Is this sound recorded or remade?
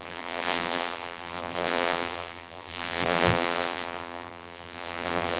remade